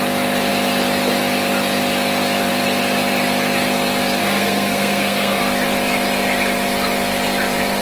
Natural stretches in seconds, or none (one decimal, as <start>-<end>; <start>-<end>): 0.0-4.2; 5.4-7.8